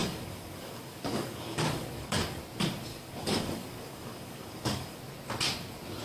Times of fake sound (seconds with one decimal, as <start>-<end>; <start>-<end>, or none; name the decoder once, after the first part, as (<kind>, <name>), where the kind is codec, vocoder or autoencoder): 0.0-2.4 (codec, DAC); 2.9-5.0